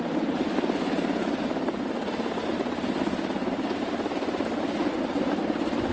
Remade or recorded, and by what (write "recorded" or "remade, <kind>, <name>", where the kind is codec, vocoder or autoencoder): recorded